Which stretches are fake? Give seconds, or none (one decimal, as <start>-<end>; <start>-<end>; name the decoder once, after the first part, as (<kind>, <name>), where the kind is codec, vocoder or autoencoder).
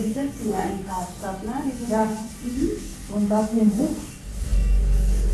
0.0-1.2 (codec, SNAC); 2.5-5.3